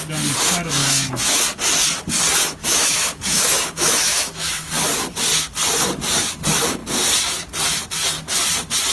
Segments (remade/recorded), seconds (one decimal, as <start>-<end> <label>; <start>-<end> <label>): 0.0-0.8 recorded; 0.8-1.4 remade; 1.4-2.6 recorded; 2.6-4.7 remade; 4.7-8.9 recorded